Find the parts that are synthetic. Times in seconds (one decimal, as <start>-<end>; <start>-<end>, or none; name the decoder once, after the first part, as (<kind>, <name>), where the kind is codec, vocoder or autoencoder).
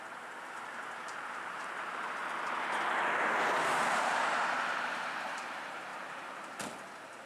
0.0-2.2 (vocoder, BigVGAN v2); 3.6-7.3